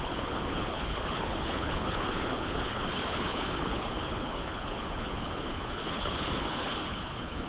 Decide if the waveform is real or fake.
fake